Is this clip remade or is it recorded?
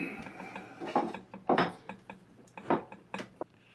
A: recorded